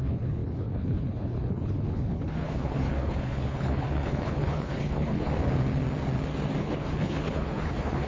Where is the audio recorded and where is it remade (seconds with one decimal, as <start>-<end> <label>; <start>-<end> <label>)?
0.0-5.3 remade; 5.3-6.6 recorded; 6.6-8.1 remade